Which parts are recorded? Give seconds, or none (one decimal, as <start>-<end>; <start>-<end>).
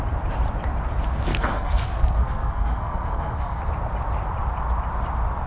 0.0-1.3; 3.6-5.5